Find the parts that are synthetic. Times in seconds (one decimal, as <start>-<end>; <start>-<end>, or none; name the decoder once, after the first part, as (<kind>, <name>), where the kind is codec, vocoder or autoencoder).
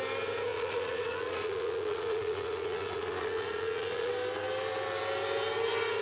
0.5-4.1 (vocoder, Vocos)